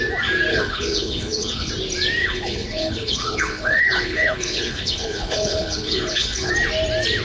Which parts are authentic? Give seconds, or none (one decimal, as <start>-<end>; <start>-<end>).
0.0-0.5; 1.7-2.2; 6.5-7.2